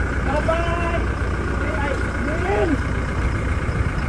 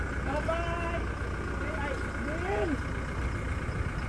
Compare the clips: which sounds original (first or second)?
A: second